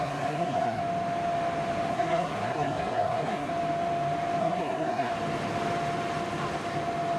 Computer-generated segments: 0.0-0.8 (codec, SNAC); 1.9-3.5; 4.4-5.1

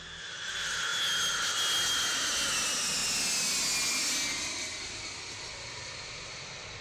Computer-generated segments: none

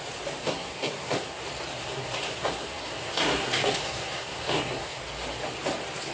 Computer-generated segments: 0.4-1.4 (codec, SNAC); 1.8-5.0

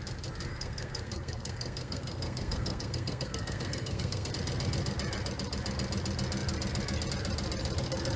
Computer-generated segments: 0.5-4.3 (codec, SNAC)

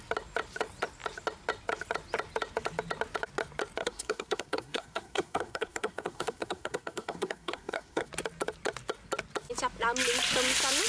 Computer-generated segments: 3.8-8.1 (codec, SNAC)